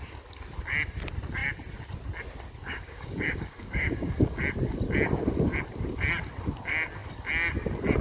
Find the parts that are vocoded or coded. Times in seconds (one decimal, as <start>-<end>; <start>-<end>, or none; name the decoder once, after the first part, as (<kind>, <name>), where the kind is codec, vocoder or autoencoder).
2.6-4.4 (codec, DAC)